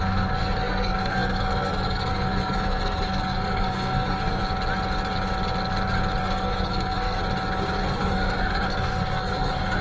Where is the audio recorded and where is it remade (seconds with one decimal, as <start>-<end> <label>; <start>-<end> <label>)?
0.0-4.4 remade; 4.4-6.2 recorded; 6.2-7.2 remade; 7.2-7.8 recorded; 7.8-9.8 remade